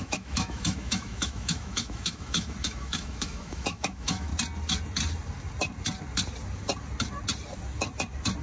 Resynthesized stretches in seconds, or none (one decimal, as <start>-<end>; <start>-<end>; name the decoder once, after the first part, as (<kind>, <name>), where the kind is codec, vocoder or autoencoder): 0.0-4.3 (autoencoder, DAC-VAE)